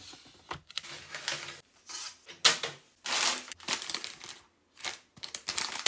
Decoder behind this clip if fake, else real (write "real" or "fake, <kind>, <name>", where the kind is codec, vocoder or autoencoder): real